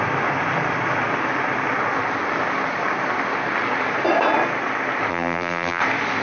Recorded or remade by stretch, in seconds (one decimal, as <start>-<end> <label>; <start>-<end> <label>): 0.0-5.1 recorded; 5.1-5.8 remade; 5.8-6.2 recorded